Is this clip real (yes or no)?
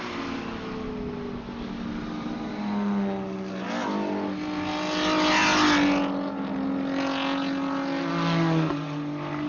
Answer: yes